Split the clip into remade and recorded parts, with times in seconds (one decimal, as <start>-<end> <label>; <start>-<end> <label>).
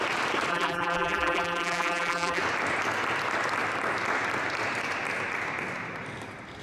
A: 0.0-0.5 recorded; 0.5-2.4 remade; 2.4-6.6 recorded